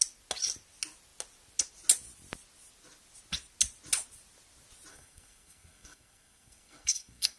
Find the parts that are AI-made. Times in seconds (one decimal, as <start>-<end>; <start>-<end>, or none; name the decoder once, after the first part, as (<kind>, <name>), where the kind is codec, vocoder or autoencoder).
4.9-7.4 (codec, SNAC)